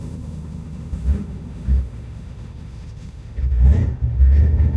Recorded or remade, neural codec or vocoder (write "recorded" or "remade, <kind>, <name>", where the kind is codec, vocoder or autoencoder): remade, autoencoder, DAC-VAE